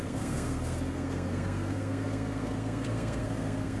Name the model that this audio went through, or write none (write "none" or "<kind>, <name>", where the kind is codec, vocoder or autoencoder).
codec, SNAC